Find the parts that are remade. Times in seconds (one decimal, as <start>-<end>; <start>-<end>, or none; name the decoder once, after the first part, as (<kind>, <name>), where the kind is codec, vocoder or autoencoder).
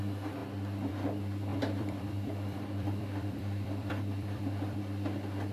1.5-4.8 (vocoder, BigVGAN v2)